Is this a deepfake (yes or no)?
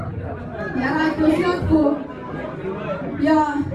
no